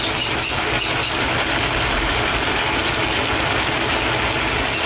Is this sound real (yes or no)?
yes